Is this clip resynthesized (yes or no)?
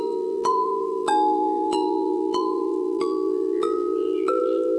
yes